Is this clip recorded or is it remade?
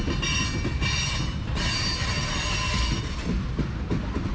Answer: recorded